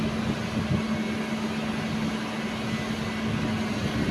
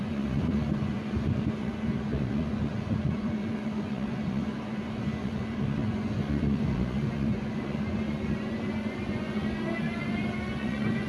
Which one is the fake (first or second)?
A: second